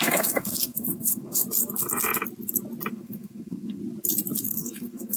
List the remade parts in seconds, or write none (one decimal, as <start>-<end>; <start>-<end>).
0.0-1.4; 2.9-3.8; 4.4-5.2